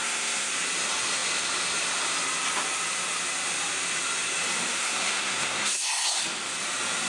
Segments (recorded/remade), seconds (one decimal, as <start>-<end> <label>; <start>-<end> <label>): 0.0-0.5 remade; 0.5-4.8 recorded; 4.8-6.2 remade; 6.2-7.1 recorded